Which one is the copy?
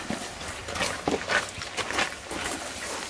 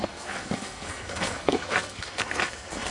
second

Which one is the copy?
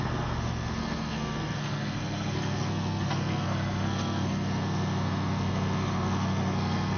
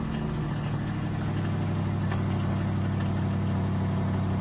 first